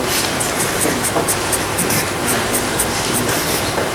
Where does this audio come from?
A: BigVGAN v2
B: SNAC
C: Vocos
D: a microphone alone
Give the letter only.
A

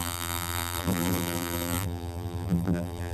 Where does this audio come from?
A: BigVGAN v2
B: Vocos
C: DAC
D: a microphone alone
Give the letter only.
A